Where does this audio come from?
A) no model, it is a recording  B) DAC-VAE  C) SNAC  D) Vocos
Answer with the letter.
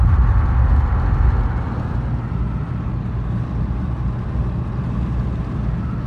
A